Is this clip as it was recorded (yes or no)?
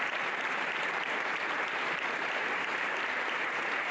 no